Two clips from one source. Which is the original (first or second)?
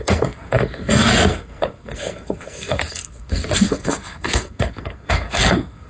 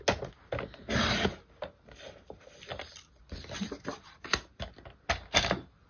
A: second